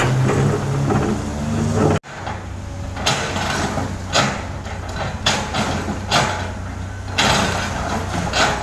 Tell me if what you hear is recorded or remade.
recorded